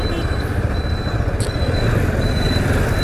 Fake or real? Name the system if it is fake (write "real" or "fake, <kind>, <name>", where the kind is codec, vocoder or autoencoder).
real